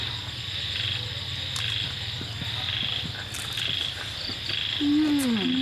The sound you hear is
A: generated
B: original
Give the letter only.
B